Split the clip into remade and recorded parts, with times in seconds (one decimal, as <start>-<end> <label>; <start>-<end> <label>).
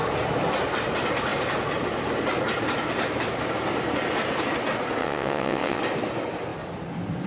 0.0-5.0 recorded; 5.0-5.8 remade; 5.8-7.3 recorded